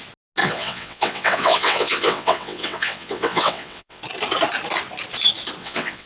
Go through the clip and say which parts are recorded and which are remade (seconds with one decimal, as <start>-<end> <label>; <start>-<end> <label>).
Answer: 0.0-0.4 recorded; 0.4-4.0 remade; 4.0-5.6 recorded; 5.6-6.1 remade